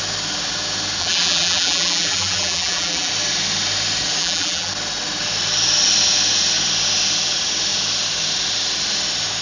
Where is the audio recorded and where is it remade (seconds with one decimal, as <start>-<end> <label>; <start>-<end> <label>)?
0.0-1.0 recorded; 1.0-3.1 remade; 3.1-4.2 recorded; 4.2-4.7 remade; 4.7-9.4 recorded